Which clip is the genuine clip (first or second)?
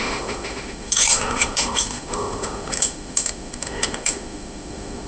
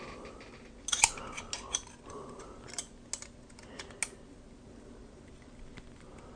second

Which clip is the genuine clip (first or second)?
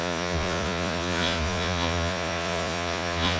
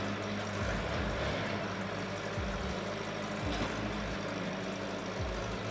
second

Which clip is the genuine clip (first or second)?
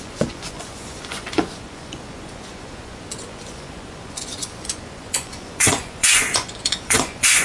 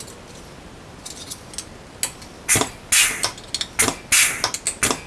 second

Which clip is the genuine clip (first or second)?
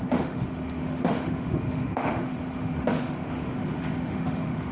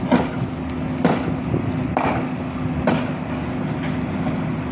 second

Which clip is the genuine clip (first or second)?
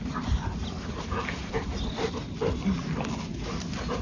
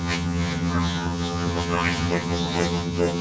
first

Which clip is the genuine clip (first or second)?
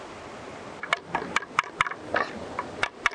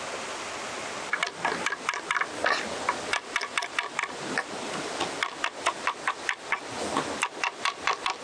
second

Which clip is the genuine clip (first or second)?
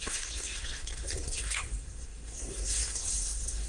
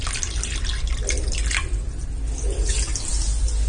second